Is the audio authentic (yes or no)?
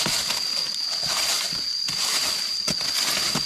yes